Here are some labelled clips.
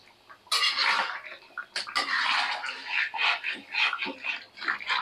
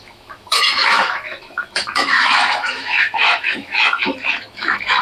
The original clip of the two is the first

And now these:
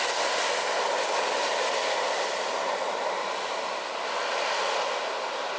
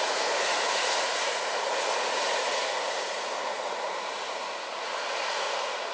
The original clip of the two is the first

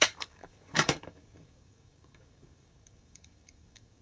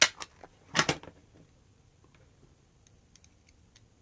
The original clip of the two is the second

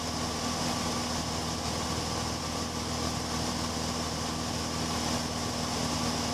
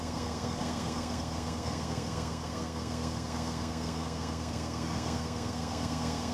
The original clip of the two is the first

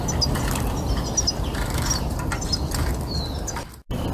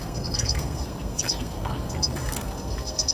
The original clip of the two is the first